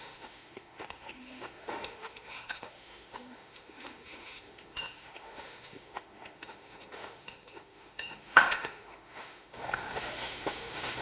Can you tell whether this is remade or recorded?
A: remade